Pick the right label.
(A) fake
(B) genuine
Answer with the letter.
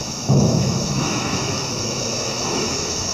A